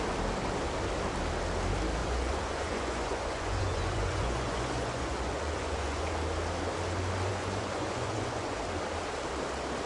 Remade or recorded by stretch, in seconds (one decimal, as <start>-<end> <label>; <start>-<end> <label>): 0.0-2.0 recorded; 2.0-6.2 remade; 6.2-7.3 recorded; 7.3-8.6 remade; 8.6-9.9 recorded